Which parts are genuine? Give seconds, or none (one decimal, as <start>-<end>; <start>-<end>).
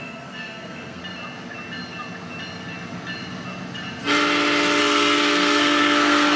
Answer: 1.0-4.8